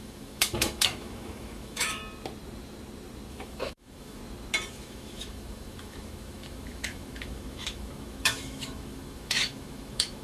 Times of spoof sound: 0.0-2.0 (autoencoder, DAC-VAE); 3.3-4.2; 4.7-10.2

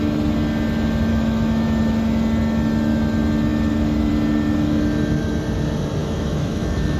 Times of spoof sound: 1.1-1.8 (autoencoder, DAC-VAE); 6.0-7.0